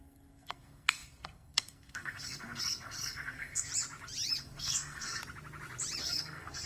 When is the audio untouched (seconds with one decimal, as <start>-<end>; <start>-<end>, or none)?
3.7-4.4; 5.2-6.0